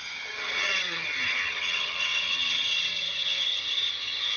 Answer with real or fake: fake